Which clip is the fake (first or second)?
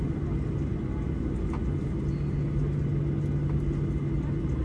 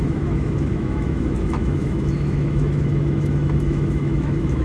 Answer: second